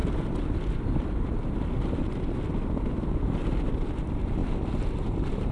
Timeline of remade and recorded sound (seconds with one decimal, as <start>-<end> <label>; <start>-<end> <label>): 0.0-5.5 recorded